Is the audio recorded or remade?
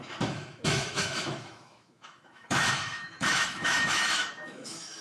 remade